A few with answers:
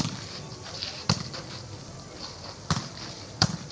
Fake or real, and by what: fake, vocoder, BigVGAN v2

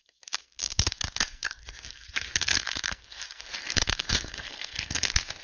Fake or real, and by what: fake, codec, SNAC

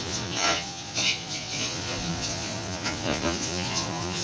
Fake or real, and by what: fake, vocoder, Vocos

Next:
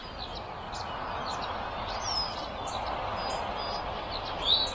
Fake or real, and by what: real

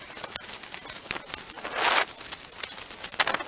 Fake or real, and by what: real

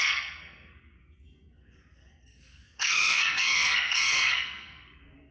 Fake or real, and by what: fake, codec, SNAC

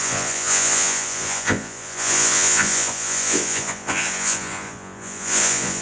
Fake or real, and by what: fake, vocoder, Vocos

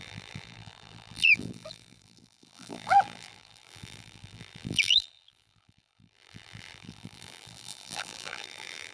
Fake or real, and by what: fake, vocoder, BigVGAN v2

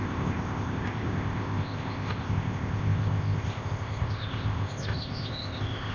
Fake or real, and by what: fake, codec, ZipCodec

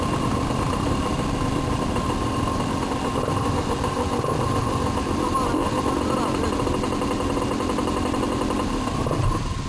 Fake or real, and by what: fake, vocoder, BigVGAN v2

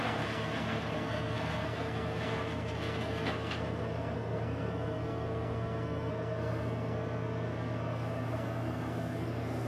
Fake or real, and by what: fake, codec, SNAC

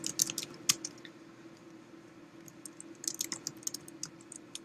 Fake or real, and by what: real